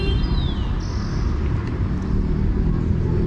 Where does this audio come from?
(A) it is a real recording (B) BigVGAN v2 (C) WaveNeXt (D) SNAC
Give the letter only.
A